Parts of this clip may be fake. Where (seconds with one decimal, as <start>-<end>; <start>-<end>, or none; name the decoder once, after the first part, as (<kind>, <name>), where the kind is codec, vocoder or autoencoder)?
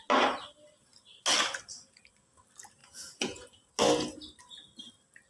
2.8-3.7 (vocoder, Vocos)